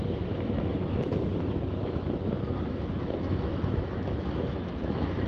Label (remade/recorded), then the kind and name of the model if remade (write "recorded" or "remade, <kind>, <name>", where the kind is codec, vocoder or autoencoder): remade, autoencoder, DAC-VAE